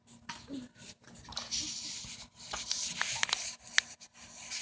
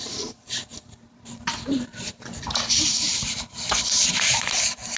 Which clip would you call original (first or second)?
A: first